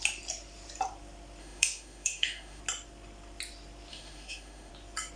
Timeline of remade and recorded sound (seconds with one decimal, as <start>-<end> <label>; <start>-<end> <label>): 0.0-1.4 recorded; 1.4-2.6 remade; 2.6-3.9 recorded; 3.9-4.7 remade; 4.7-5.2 recorded

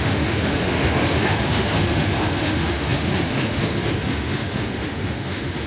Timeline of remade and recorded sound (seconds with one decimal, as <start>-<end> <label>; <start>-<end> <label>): 0.0-5.7 remade